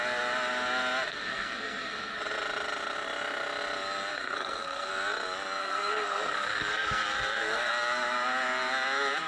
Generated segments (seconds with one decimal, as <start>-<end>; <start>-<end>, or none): 1.1-2.1; 4.1-4.9; 5.6-7.7

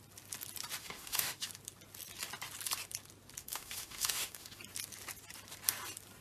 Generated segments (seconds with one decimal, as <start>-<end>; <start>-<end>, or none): 0.8-1.5; 3.4-4.6

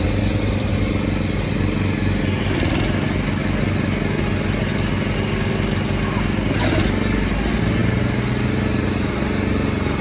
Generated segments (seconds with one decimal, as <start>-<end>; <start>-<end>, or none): none